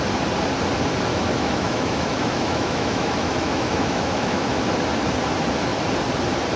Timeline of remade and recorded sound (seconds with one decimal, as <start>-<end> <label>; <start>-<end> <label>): 0.0-1.1 recorded; 1.1-4.6 remade; 4.6-6.6 recorded